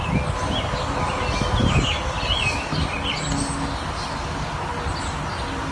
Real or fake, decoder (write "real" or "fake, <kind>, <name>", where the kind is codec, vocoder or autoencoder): real